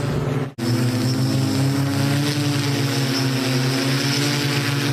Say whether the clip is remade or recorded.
recorded